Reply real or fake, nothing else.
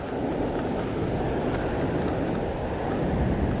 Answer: real